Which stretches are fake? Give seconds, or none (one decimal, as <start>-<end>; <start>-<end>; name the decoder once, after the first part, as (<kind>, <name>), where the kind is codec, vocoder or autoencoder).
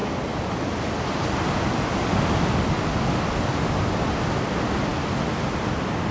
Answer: none